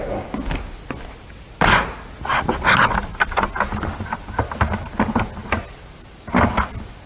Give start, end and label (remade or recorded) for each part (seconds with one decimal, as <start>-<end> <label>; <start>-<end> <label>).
0.0-7.1 recorded